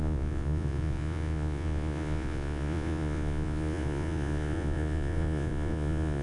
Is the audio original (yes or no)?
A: no